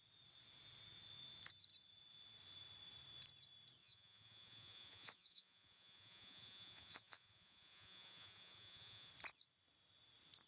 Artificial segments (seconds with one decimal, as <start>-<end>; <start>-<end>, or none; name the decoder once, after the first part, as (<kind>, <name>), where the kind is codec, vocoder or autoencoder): 3.8-9.1 (vocoder, Vocos)